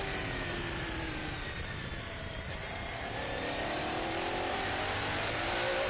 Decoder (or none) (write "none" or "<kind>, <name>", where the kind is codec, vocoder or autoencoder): vocoder, BigVGAN v2